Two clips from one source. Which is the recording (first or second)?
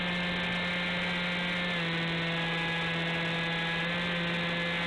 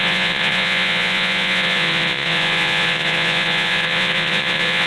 first